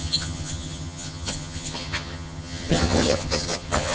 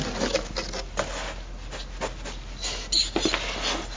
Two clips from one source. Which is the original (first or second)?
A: second